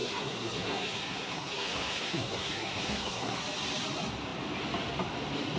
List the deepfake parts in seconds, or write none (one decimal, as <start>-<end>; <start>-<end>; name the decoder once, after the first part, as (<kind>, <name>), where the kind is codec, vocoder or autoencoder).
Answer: 0.0-3.4 (codec, SNAC)